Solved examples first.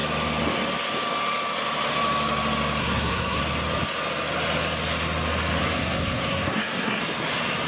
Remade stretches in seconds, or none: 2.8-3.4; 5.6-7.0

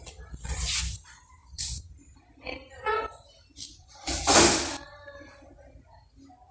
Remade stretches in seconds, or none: 1.4-2.0; 3.8-4.6